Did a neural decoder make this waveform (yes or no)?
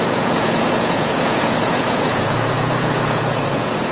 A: yes